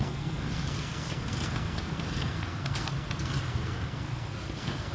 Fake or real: fake